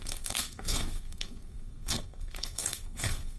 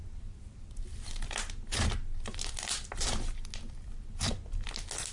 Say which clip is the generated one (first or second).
first